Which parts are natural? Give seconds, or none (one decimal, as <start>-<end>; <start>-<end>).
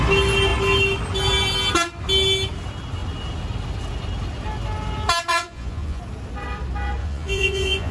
0.0-5.3; 6.0-7.0